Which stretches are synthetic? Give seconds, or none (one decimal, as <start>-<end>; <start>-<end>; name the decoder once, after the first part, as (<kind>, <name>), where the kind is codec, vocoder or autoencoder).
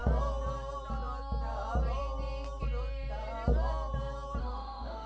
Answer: 4.4-5.1 (autoencoder, DAC-VAE)